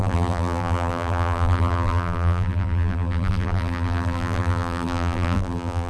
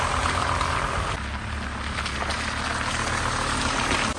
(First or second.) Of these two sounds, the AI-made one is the first